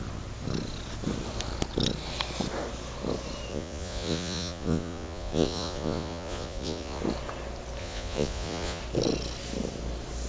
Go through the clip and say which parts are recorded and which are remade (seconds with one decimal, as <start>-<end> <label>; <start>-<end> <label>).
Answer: 0.0-3.5 recorded; 3.5-7.0 remade; 7.0-7.8 recorded; 7.8-8.8 remade; 8.8-10.3 recorded